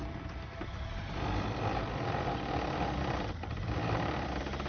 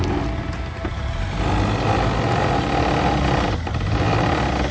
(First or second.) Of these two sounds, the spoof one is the first